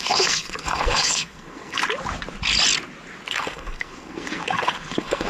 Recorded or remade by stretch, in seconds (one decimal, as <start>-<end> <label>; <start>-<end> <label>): 0.0-1.8 remade; 1.8-3.3 recorded; 3.3-5.3 remade